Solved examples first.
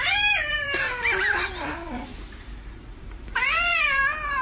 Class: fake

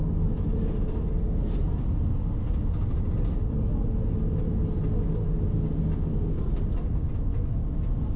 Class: real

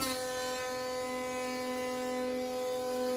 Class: real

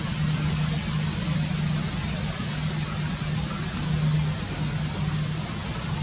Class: real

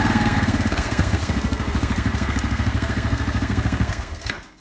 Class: fake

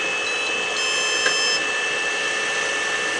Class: real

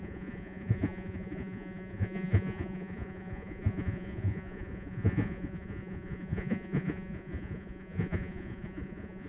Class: fake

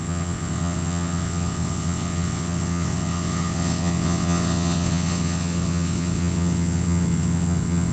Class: fake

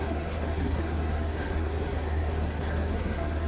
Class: fake